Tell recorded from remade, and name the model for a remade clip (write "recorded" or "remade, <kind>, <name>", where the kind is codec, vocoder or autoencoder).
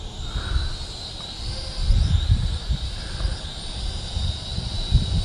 recorded